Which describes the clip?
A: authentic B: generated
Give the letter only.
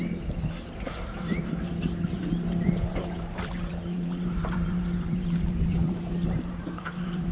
B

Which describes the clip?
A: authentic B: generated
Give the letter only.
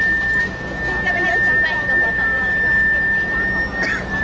A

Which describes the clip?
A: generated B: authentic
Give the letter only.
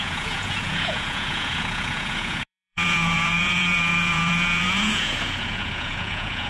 A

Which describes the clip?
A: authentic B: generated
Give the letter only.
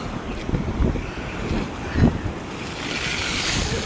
A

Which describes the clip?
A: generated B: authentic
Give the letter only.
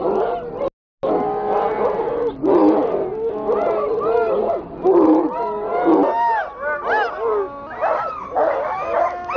B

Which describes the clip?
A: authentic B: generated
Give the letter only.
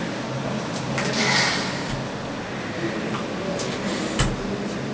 A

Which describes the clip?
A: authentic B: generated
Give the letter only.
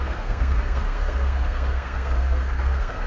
B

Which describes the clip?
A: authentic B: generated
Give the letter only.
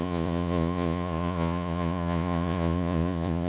B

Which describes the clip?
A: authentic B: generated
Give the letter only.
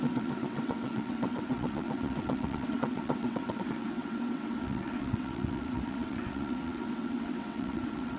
B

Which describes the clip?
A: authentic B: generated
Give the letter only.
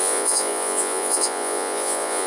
B